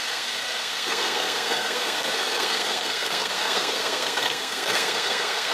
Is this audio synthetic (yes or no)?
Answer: yes